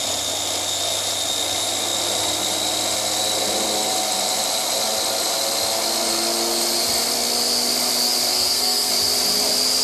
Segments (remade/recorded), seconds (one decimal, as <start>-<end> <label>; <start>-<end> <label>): 0.0-8.3 recorded; 8.3-8.9 remade; 8.9-9.8 recorded